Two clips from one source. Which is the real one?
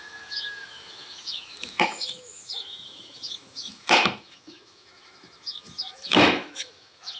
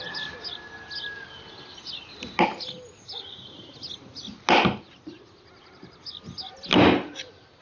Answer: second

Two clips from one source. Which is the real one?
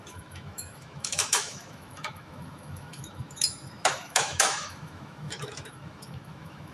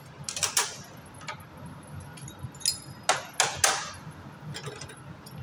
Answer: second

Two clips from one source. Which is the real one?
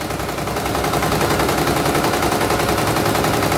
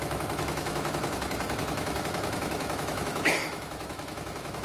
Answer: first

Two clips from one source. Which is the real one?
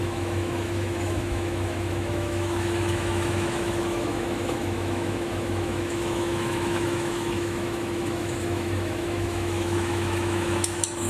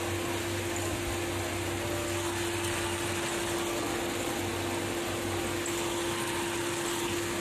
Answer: second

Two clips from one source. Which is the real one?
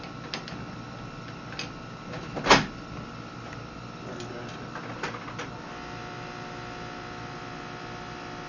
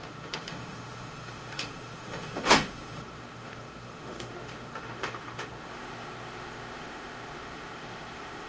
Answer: first